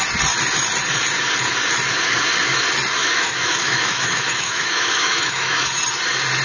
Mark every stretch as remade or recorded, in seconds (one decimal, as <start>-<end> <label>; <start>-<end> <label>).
0.0-3.0 recorded; 3.0-5.7 remade; 5.7-6.4 recorded